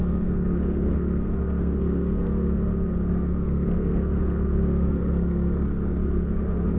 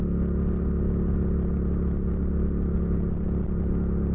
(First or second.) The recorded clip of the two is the second